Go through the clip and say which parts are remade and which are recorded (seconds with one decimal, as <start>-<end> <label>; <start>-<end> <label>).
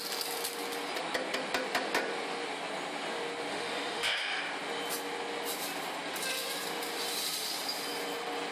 0.0-3.5 recorded; 3.5-4.4 remade; 4.4-8.5 recorded